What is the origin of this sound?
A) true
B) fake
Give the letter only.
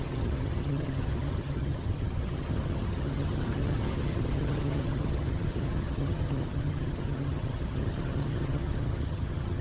B